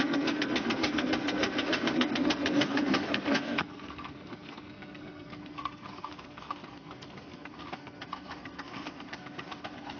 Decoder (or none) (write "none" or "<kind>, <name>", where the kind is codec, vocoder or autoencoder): codec, SNAC